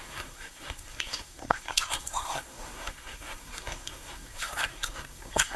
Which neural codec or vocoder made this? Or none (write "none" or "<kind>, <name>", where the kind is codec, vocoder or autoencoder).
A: codec, SNAC